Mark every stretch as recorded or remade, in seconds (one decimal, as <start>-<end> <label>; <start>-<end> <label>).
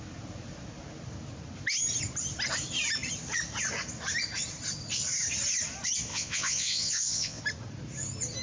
0.0-6.1 recorded; 6.1-7.4 remade; 7.4-8.4 recorded